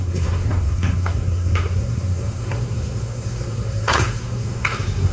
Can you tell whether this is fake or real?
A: fake